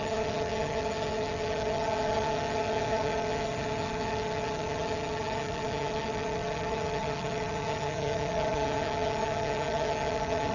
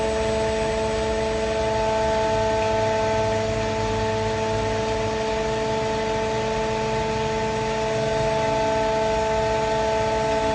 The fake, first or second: first